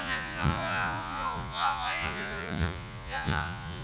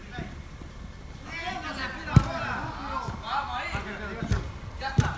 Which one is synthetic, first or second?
first